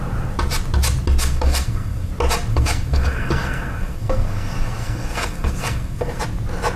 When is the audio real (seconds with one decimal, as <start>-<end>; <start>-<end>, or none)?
0.0-1.2; 2.1-2.5; 6.2-6.8